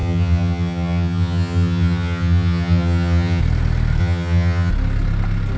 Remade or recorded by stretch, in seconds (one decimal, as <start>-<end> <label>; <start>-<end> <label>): 0.0-3.4 remade; 3.4-4.0 recorded; 4.0-4.7 remade; 4.7-5.6 recorded